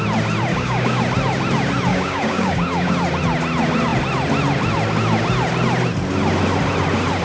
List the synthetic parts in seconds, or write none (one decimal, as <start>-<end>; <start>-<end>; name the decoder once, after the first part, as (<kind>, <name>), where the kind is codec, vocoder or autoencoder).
0.5-1.0 (codec, DAC); 1.9-2.9